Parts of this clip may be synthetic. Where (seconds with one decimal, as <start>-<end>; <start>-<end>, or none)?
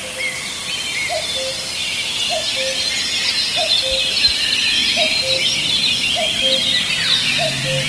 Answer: none